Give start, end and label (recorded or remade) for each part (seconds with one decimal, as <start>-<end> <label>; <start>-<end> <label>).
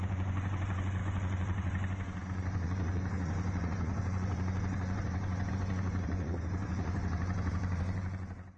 0.0-8.6 remade